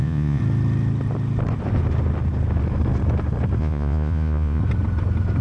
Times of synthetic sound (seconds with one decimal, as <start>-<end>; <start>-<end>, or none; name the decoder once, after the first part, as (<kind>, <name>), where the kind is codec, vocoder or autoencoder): 0.0-0.4 (vocoder, Vocos); 3.6-4.6